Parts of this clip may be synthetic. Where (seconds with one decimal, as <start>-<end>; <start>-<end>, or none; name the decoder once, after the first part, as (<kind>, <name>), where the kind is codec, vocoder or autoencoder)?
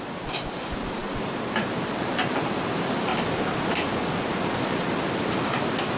0.0-3.1 (vocoder, BigVGAN v2); 4.4-6.0